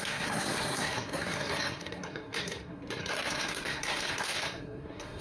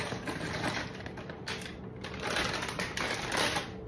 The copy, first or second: first